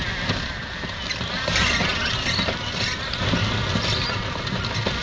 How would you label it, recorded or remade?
recorded